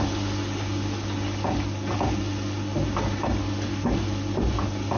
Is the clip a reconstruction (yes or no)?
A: no